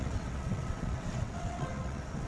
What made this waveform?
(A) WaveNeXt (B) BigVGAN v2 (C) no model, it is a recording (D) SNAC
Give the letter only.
A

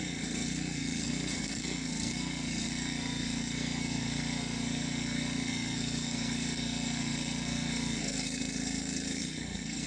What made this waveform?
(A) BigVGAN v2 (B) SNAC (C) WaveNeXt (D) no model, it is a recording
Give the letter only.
B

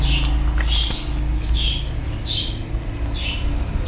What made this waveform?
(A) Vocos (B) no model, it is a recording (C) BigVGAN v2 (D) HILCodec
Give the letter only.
B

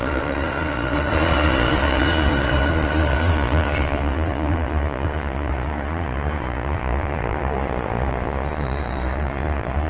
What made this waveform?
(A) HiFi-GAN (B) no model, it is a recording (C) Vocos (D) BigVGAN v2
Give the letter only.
C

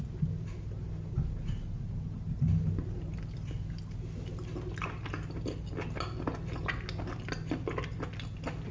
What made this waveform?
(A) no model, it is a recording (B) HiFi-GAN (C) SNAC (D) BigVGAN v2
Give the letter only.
A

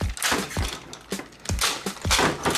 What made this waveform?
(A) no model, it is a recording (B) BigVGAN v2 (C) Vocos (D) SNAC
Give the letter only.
A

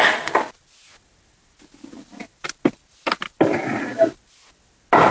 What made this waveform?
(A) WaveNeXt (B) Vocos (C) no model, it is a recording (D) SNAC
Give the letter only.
C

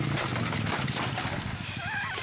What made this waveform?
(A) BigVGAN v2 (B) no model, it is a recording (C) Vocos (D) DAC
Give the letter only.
B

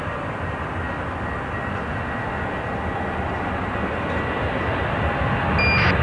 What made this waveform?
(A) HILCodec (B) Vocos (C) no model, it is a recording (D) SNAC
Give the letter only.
C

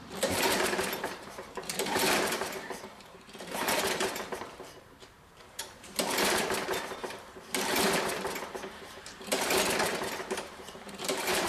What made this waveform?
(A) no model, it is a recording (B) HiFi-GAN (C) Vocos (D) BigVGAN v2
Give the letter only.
D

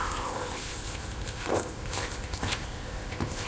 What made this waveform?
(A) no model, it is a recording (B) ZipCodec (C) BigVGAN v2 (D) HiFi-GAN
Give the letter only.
B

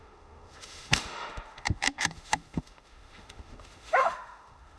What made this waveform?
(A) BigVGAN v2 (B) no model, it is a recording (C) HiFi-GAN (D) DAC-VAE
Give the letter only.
D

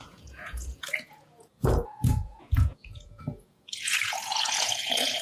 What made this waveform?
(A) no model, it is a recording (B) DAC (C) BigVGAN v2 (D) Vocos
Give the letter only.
D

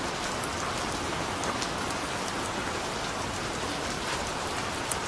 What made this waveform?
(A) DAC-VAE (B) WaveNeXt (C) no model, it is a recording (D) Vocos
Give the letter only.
C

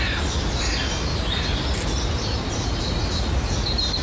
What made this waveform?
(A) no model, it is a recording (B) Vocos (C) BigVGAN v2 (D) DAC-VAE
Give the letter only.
A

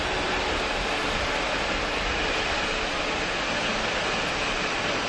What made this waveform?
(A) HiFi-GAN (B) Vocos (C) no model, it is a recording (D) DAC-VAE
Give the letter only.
C